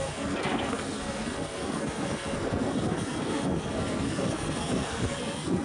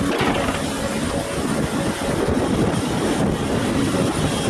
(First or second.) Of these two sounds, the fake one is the first